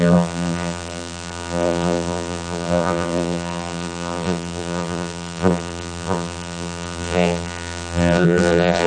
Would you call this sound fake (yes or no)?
yes